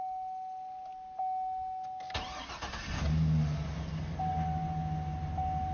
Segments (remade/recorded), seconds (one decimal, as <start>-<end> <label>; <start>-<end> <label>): 0.0-5.7 recorded